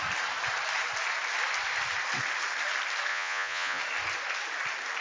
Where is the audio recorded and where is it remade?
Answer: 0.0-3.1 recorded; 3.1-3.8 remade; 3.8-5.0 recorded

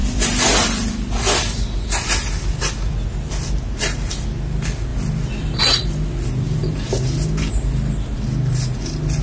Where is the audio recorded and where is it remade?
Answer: 0.0-9.2 recorded

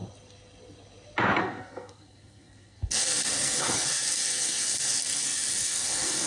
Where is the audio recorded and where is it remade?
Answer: 0.0-1.4 recorded; 1.4-6.3 remade

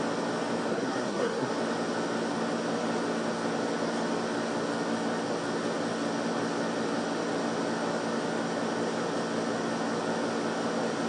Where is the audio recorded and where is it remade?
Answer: 0.0-0.7 recorded; 0.7-1.5 remade; 1.5-11.1 recorded

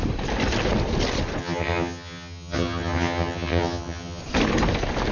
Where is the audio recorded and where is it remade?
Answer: 0.0-1.4 recorded; 1.4-4.2 remade; 4.2-5.1 recorded

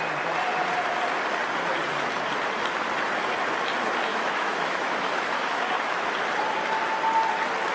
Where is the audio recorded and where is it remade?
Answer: 0.0-4.1 recorded; 4.1-6.1 remade; 6.1-7.7 recorded

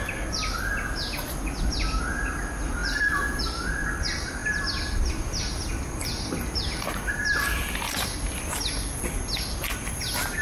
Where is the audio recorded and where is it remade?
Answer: 0.0-10.4 recorded

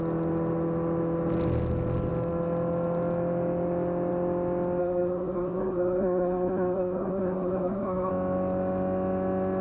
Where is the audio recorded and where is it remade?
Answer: 0.0-4.8 recorded; 4.8-8.1 remade; 8.1-9.6 recorded